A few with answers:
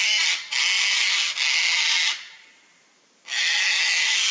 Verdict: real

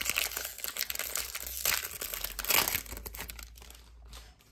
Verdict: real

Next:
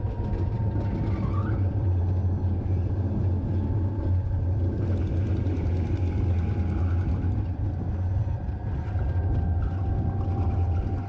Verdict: real